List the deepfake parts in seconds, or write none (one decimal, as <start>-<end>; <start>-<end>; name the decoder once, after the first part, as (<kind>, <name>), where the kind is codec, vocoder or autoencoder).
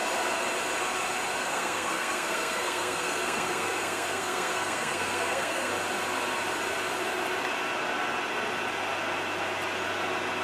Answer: 1.4-5.7 (codec, SNAC)